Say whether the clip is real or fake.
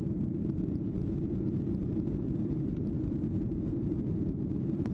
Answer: fake